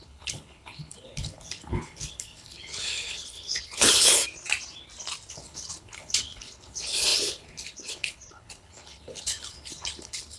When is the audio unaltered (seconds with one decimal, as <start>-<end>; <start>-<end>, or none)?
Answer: 4.2-5.3